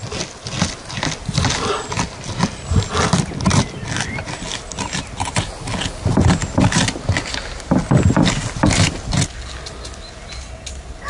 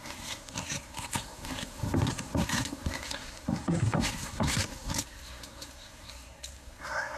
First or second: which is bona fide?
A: first